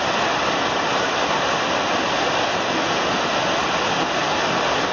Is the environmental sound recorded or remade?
recorded